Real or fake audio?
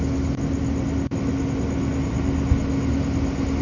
real